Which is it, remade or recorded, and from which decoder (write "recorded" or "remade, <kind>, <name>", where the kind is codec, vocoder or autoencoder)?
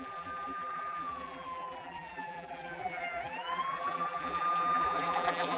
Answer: remade, vocoder, BigVGAN v2